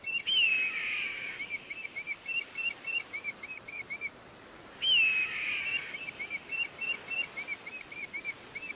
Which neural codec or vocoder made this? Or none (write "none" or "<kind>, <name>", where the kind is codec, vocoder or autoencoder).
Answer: none